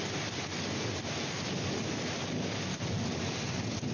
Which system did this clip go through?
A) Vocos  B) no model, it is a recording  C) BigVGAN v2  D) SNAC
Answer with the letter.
B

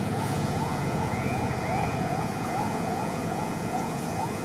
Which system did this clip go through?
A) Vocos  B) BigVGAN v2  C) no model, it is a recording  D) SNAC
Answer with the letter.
A